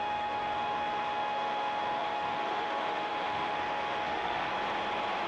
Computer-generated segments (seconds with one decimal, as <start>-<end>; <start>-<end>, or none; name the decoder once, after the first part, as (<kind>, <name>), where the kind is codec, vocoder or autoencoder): 0.0-4.5 (autoencoder, DAC-VAE)